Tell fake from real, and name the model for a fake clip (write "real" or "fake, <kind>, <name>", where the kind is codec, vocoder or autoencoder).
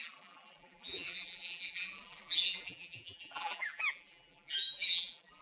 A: fake, vocoder, BigVGAN v2